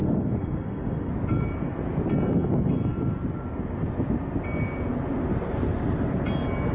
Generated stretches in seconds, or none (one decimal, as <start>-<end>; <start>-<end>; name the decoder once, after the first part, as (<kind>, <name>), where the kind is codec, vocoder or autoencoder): 0.0-1.1 (autoencoder, DAC-VAE)